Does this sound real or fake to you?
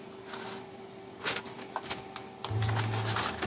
real